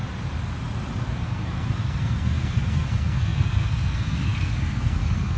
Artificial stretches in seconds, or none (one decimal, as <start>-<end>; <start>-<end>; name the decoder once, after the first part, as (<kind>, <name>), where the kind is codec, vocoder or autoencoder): 1.1-5.4 (codec, SNAC)